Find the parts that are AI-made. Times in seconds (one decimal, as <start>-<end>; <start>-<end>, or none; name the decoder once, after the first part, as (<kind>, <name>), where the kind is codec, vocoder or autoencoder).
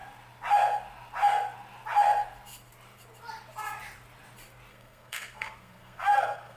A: 4.7-6.6 (codec, SNAC)